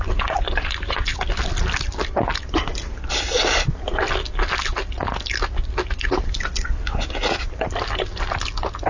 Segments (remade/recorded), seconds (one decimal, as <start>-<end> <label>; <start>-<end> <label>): 0.0-8.9 recorded